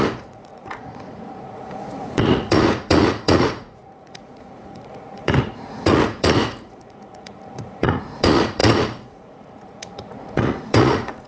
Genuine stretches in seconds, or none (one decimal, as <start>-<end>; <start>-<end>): none